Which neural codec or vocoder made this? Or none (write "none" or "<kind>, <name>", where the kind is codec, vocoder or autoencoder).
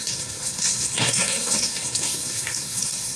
codec, SNAC